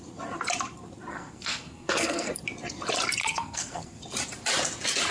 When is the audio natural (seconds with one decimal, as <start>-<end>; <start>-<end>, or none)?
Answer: 0.0-1.1; 2.3-3.2; 4.0-5.1